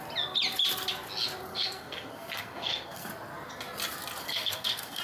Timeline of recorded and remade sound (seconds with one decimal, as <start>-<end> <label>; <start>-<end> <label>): 0.0-1.5 recorded; 1.5-3.1 remade; 3.1-4.2 recorded; 4.2-5.0 remade

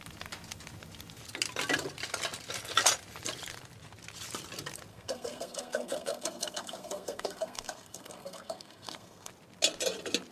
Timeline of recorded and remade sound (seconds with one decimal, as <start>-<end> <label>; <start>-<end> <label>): 0.0-4.9 recorded; 4.9-9.3 remade; 9.3-10.3 recorded

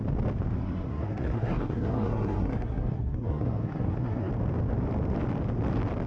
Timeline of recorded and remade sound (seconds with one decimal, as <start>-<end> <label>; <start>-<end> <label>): 0.0-0.6 recorded; 0.6-4.3 remade; 4.3-6.1 recorded

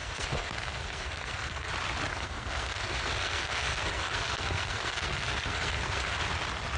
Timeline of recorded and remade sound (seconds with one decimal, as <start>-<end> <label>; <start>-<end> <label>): 0.0-1.7 remade; 1.7-2.1 recorded; 2.1-6.2 remade; 6.2-6.8 recorded

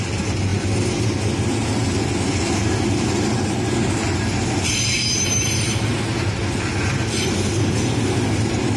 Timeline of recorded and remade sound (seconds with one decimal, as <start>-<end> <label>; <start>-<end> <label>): 0.0-8.8 recorded

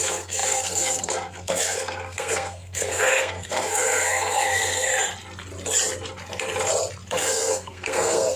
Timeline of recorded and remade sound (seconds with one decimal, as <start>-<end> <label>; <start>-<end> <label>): 0.0-4.9 remade; 4.9-7.1 recorded; 7.1-8.4 remade